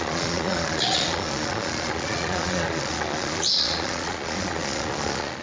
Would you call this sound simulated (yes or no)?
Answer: yes